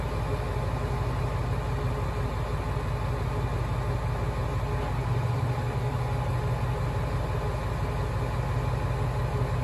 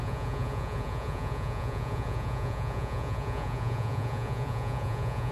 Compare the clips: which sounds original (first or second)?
first